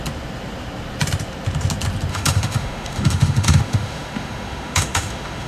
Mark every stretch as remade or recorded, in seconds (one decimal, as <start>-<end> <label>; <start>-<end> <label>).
0.0-2.1 recorded; 2.1-5.5 remade